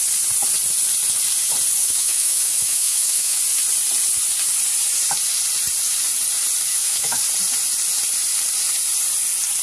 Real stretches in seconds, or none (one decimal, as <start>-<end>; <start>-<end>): 0.0-1.8; 3.4-6.7; 7.2-9.6